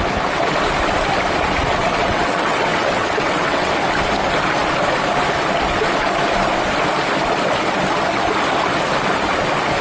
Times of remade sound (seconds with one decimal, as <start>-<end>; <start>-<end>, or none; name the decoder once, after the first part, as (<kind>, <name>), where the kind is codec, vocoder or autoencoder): 1.7-3.7 (vocoder, WaveNeXt)